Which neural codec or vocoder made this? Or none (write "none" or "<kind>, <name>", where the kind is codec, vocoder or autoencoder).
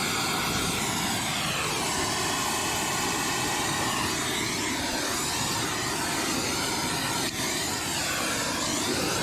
none